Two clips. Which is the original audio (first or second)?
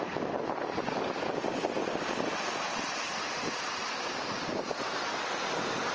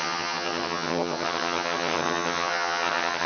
first